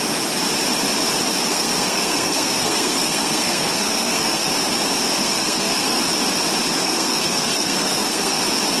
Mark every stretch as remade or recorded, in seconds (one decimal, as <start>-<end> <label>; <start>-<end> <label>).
0.0-1.5 recorded; 1.5-4.5 remade; 4.5-5.2 recorded; 5.2-6.0 remade; 6.0-6.7 recorded; 6.7-8.4 remade; 8.4-8.8 recorded